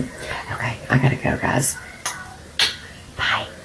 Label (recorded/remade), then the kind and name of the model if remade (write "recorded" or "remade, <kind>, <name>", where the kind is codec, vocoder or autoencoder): recorded